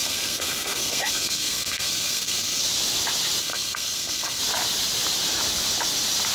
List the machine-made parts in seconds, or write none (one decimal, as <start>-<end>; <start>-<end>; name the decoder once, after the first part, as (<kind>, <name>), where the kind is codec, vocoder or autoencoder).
0.0-2.6 (codec, SNAC); 3.4-4.4